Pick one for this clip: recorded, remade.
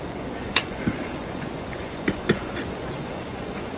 remade